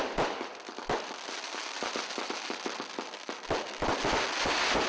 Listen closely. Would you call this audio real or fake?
real